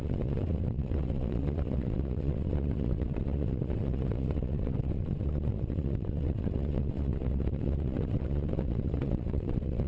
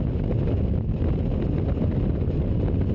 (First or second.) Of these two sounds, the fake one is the first